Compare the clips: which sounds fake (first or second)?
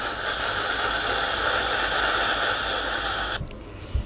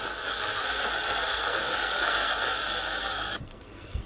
second